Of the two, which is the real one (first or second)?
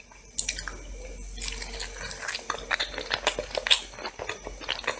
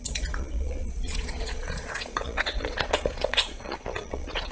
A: first